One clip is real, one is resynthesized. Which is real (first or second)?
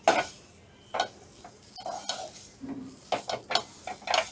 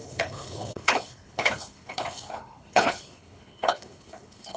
first